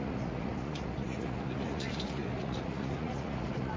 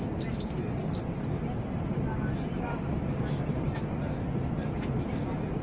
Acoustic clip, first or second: second